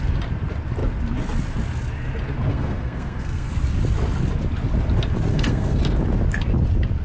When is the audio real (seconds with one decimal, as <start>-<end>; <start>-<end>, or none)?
0.0-2.5; 3.5-5.3; 5.8-7.0